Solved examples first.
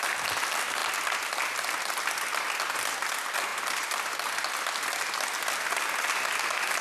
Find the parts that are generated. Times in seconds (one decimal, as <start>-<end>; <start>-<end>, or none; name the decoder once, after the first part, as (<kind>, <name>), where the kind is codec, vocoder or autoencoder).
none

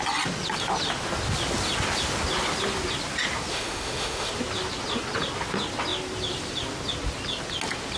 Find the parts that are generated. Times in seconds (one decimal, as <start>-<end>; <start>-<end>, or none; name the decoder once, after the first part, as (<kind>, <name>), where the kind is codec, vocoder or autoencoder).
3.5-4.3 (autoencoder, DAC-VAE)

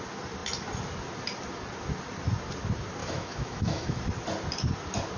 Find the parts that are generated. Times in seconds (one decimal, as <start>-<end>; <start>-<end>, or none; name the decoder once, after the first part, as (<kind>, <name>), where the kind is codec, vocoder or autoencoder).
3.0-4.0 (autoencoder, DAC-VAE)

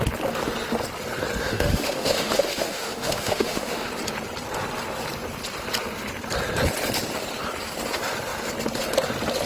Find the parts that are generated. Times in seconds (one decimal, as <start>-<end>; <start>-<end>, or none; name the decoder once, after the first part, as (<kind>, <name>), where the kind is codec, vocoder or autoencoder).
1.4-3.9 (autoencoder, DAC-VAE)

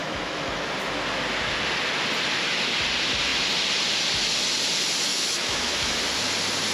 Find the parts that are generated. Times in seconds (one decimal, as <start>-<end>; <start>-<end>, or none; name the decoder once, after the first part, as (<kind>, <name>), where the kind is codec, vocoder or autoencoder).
0.0-0.7 (autoencoder, DAC-VAE); 5.1-6.0

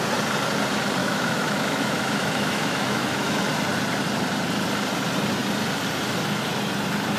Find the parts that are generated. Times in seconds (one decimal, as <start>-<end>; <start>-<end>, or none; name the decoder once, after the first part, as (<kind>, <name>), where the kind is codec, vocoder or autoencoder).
1.0-3.4 (autoencoder, DAC-VAE)